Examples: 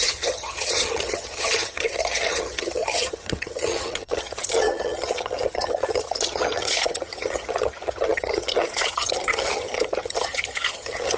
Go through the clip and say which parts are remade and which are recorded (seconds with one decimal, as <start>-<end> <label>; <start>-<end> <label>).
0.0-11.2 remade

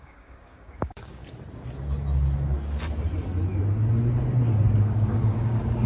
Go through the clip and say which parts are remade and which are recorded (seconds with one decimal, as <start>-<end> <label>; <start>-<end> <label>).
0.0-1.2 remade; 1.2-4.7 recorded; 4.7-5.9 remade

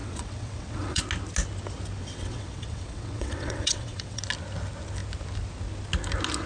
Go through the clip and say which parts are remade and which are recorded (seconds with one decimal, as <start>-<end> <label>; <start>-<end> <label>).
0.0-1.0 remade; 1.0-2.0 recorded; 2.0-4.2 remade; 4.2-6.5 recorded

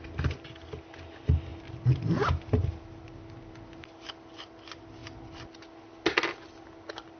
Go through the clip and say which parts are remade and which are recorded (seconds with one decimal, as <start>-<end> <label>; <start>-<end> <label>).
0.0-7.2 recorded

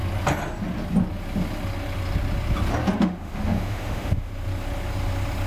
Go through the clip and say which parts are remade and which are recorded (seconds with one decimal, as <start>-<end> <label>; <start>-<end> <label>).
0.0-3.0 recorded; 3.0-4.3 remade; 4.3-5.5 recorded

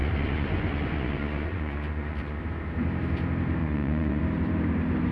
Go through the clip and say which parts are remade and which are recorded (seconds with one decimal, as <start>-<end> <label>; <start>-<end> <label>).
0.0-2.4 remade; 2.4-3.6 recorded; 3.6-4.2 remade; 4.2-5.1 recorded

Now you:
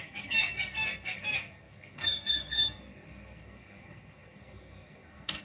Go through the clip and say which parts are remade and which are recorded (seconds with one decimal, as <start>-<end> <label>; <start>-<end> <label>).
0.0-5.4 remade

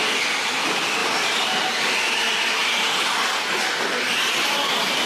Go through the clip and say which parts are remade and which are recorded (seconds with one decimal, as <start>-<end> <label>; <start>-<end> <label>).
0.0-5.1 recorded